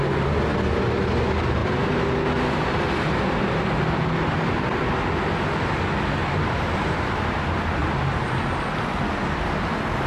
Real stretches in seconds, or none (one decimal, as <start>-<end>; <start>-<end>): 0.0-6.2; 7.1-7.8; 8.4-10.1